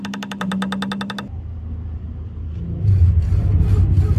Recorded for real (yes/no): yes